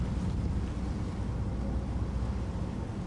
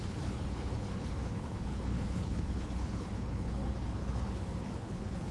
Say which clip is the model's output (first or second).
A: second